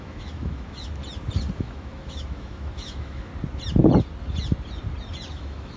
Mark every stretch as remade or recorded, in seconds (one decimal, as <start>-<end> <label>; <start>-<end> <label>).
0.0-1.0 remade; 1.0-1.6 recorded; 1.6-3.3 remade; 3.3-5.3 recorded; 5.3-5.8 remade